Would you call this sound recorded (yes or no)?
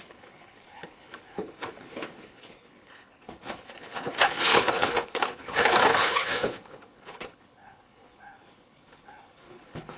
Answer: no